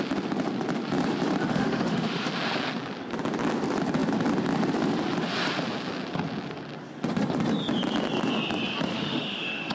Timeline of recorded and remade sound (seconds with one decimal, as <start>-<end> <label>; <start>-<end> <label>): 0.0-1.5 recorded; 1.5-2.3 remade; 2.3-8.9 recorded; 8.9-9.7 remade